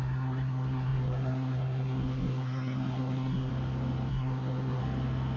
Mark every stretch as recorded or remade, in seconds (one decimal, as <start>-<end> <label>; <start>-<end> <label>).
0.0-3.5 remade; 3.5-4.1 recorded; 4.1-4.8 remade; 4.8-5.4 recorded